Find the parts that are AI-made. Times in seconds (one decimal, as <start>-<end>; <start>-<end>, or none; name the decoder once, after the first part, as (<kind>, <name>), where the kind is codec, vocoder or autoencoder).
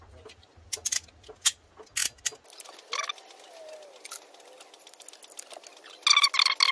none